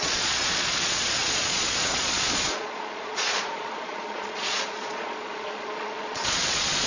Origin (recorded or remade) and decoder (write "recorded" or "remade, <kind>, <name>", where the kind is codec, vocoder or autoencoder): remade, vocoder, Vocos